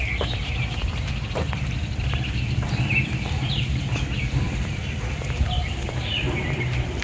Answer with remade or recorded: remade